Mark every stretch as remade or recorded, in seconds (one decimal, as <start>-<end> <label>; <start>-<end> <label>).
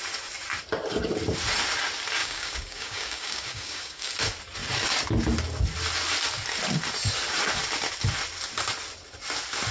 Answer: 0.0-2.2 recorded; 2.2-4.1 remade; 4.1-9.7 recorded